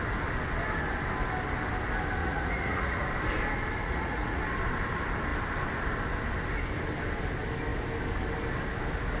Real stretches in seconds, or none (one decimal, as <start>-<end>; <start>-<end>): 0.0-2.2; 3.1-3.8; 4.4-9.2